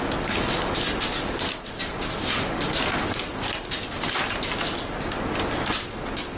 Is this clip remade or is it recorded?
recorded